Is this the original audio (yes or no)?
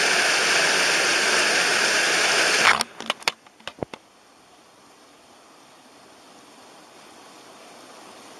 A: yes